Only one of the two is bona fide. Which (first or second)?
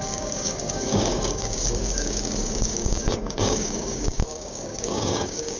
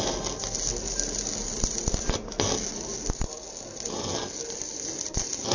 second